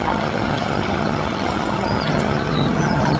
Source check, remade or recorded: remade